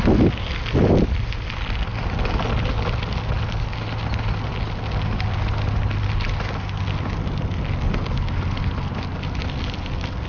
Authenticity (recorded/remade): recorded